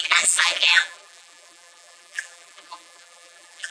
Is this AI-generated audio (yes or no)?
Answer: yes